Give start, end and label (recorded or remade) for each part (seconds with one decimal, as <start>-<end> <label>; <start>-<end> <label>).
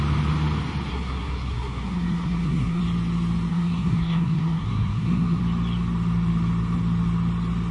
0.0-0.9 recorded; 0.9-2.8 remade; 2.8-3.5 recorded; 3.5-5.4 remade; 5.4-7.7 recorded